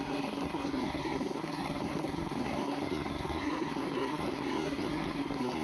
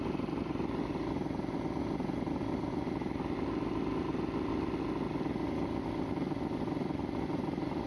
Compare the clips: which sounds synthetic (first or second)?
first